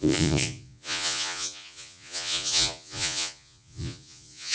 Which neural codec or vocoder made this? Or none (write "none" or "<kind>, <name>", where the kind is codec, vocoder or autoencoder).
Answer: vocoder, Vocos